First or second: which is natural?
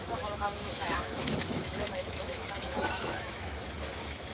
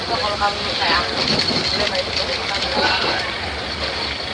second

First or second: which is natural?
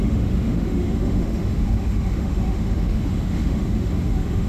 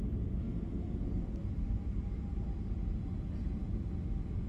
second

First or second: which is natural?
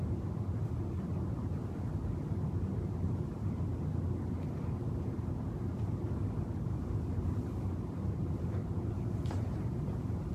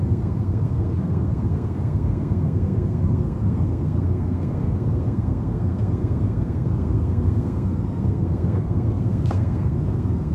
first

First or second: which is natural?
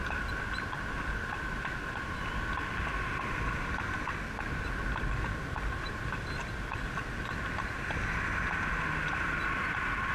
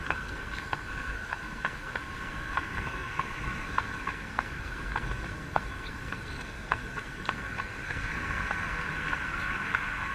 first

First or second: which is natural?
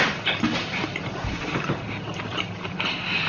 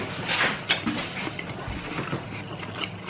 second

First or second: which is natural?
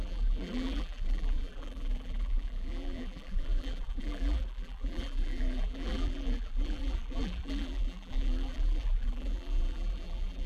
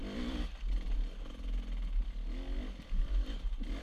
second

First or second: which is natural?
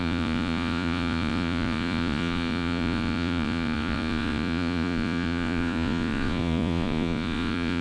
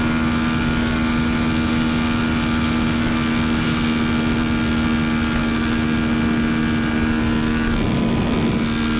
second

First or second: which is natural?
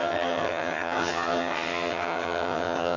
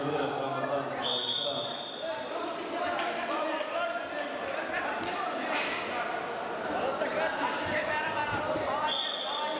second